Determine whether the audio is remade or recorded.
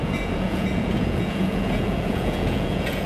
remade